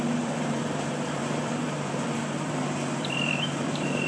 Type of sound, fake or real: fake